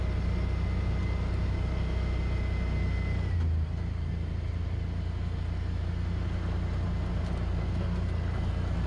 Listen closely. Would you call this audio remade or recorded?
recorded